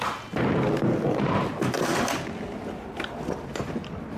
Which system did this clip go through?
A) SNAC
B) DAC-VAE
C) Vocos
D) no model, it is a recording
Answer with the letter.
D